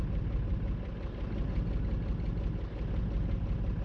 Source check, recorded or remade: recorded